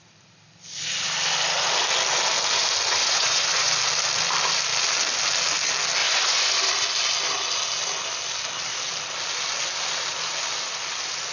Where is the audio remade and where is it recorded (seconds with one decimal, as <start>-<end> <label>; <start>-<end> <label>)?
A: 0.0-3.0 recorded; 3.0-3.7 remade; 3.7-6.0 recorded; 6.0-6.7 remade; 6.7-11.3 recorded